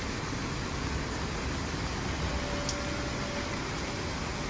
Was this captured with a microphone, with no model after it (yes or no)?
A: yes